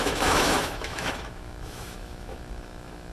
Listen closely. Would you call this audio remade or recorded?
remade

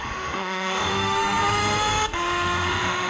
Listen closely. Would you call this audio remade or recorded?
remade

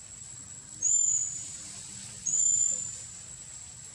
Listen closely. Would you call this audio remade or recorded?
recorded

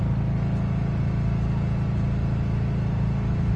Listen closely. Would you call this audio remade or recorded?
recorded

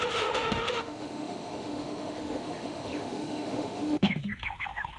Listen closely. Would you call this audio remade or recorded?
remade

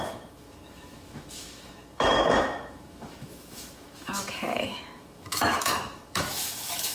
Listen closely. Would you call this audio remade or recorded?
remade